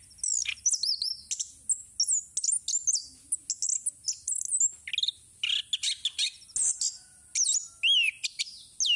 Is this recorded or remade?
recorded